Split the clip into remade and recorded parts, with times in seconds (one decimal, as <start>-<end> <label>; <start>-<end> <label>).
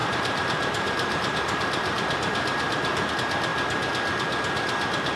0.0-3.1 remade; 3.1-5.2 recorded